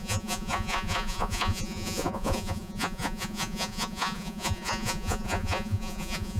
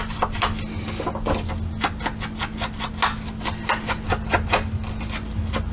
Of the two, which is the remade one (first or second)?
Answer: first